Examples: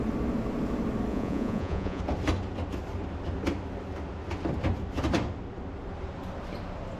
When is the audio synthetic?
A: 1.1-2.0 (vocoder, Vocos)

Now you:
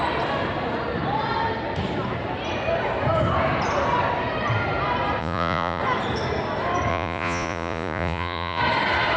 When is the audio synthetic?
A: 5.2-5.8 (vocoder, Vocos); 6.9-8.6

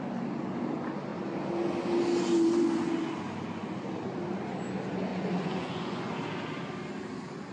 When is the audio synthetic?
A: 5.1-6.1 (vocoder, Vocos)

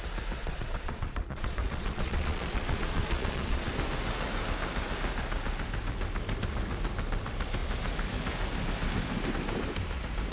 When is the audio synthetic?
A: 0.4-3.7 (vocoder, Vocos)

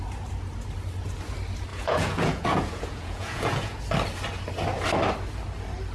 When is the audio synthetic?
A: 1.7-3.8 (vocoder, Vocos)

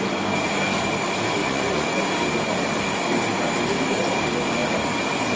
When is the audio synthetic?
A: 1.4-2.0 (vocoder, Vocos)

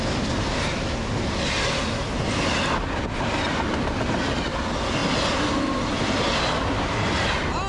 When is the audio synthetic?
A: none